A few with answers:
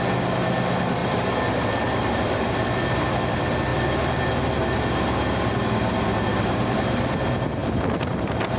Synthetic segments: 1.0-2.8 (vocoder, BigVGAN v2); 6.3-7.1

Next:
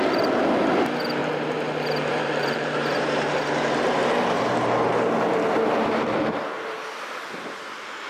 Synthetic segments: 1.2-3.4 (vocoder, BigVGAN v2); 4.0-6.9

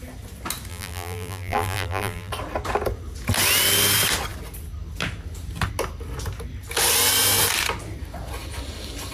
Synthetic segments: 0.7-2.3 (vocoder, BigVGAN v2)

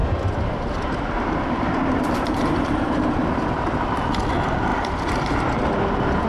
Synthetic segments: 0.0-3.7 (vocoder, BigVGAN v2); 4.7-5.4

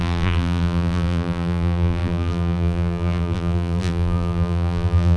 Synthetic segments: 0.0-5.2 (vocoder, BigVGAN v2)

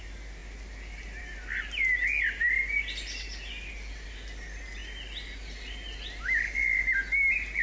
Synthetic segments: none

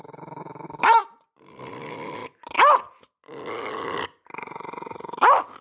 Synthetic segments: none

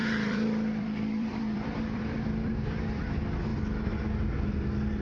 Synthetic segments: 0.0-3.0 (vocoder, BigVGAN v2)